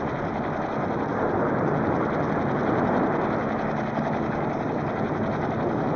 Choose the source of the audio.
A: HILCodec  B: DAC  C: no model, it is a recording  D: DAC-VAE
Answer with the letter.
C